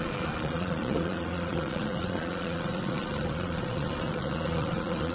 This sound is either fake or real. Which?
fake